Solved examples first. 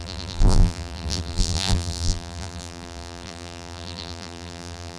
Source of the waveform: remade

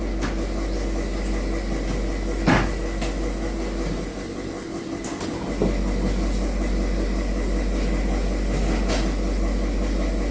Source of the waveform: recorded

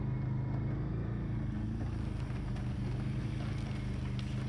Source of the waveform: recorded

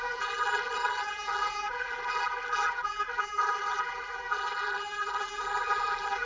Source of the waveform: remade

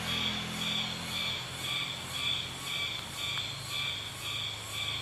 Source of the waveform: recorded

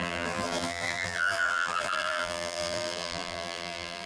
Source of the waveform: remade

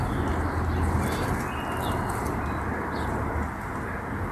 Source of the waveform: recorded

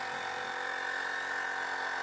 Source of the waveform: recorded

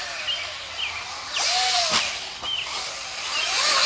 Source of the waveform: recorded